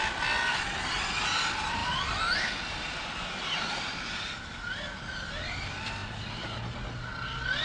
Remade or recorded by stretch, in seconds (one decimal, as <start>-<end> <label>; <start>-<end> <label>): 0.0-7.6 recorded